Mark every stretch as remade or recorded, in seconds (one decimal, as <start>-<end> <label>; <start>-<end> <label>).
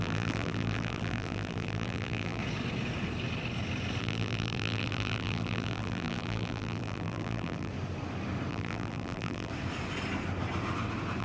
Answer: 0.0-2.4 remade; 2.4-4.0 recorded; 4.0-7.7 remade; 7.7-8.5 recorded; 8.5-9.5 remade; 9.5-11.2 recorded